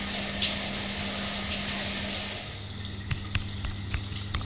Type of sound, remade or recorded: recorded